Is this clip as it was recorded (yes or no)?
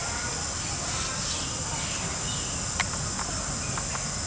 yes